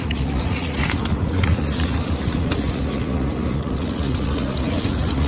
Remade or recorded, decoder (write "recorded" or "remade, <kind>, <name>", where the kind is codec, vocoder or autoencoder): remade, vocoder, Vocos